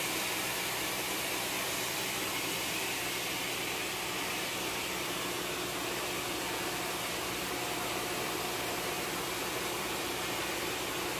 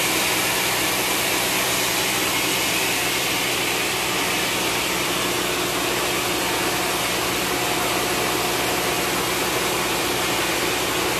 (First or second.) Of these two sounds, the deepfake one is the first